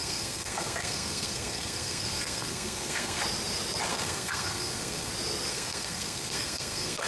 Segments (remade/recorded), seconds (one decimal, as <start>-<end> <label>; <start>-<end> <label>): 0.0-3.2 remade; 3.2-3.9 recorded; 3.9-5.1 remade; 5.1-5.5 recorded; 5.5-7.1 remade